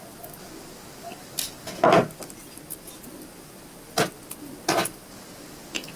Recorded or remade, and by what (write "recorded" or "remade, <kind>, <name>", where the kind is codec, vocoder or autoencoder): recorded